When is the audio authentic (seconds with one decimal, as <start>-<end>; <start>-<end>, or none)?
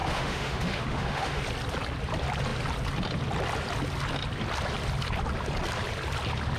1.4-6.6